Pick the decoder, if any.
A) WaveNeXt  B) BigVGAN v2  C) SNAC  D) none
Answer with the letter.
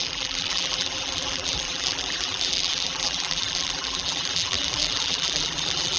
B